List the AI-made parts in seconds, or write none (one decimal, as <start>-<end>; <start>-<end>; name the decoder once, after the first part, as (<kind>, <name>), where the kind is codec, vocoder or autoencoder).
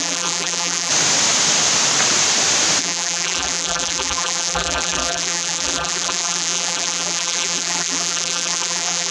0.0-0.9 (vocoder, BigVGAN v2); 2.8-9.1